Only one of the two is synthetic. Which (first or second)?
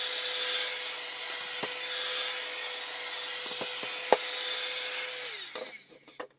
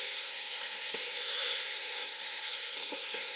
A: second